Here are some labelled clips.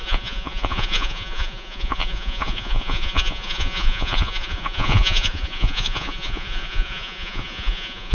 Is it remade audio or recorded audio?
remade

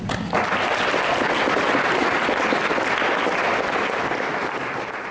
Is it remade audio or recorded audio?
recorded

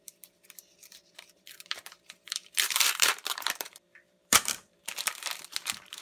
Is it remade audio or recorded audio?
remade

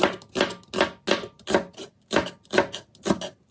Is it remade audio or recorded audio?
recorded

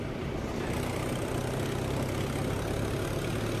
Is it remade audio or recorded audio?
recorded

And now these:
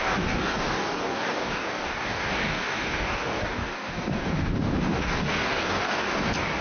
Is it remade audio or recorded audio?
remade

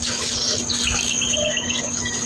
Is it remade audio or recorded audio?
remade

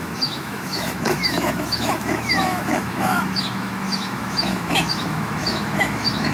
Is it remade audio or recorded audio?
remade